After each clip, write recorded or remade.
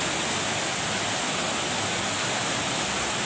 recorded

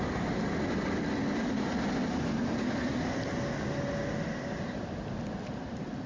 recorded